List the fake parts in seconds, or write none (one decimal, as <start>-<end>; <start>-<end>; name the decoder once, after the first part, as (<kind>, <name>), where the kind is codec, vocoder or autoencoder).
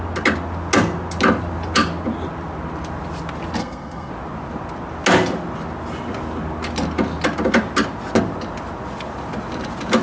3.6-4.1 (codec, SNAC)